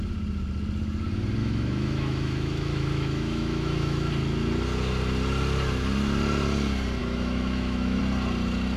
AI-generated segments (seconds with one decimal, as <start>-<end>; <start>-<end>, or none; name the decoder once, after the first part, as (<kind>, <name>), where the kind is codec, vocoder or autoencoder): 1.4-4.1 (autoencoder, DAC-VAE); 7.0-8.0